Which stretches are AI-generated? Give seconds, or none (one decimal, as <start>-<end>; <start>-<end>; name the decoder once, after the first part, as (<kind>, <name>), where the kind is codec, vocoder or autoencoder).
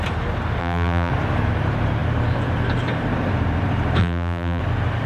0.6-1.1 (vocoder, BigVGAN v2); 4.0-4.6